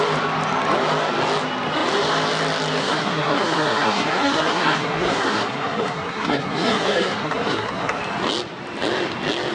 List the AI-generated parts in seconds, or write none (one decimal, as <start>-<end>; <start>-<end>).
2.8-8.0